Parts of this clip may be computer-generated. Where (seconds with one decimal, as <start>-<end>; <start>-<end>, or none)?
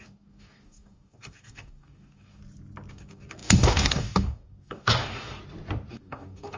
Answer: 0.0-2.4; 2.9-5.4; 5.9-6.6